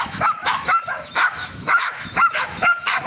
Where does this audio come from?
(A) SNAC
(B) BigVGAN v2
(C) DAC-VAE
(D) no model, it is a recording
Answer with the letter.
C